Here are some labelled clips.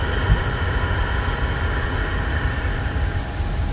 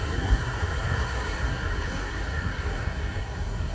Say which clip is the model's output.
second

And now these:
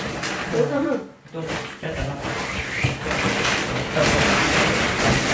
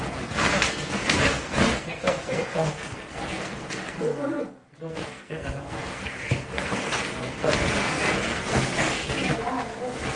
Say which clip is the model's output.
second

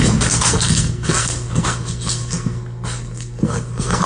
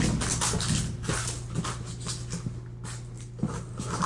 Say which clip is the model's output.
first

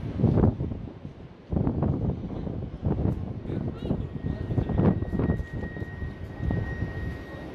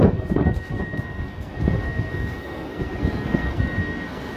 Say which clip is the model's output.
second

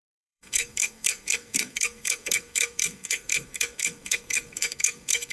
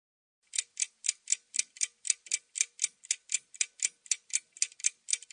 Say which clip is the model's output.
first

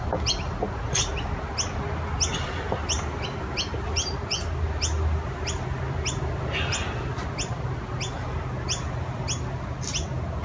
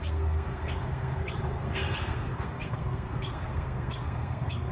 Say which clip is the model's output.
second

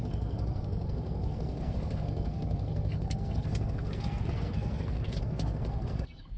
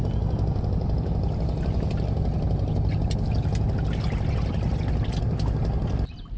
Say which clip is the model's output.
first